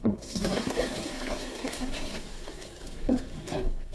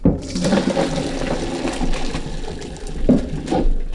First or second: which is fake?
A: first